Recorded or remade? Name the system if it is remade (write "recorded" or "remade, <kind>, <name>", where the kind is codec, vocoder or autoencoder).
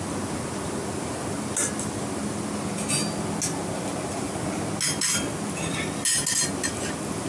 recorded